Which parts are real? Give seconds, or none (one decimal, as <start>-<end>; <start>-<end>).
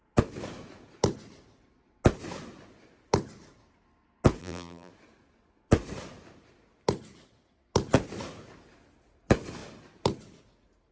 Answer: 0.0-4.4; 4.9-10.9